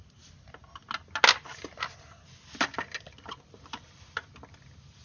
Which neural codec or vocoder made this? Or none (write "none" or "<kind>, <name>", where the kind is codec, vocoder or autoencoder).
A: none